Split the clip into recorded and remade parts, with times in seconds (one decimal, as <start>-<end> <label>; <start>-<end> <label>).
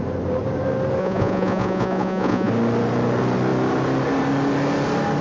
0.0-1.0 recorded; 1.0-2.5 remade; 2.5-5.2 recorded